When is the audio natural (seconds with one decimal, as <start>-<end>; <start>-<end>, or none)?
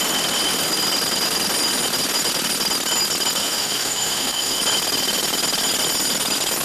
0.0-3.4; 4.6-6.6